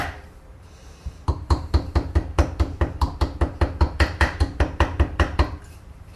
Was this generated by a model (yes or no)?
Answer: yes